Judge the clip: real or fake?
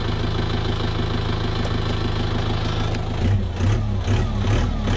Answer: real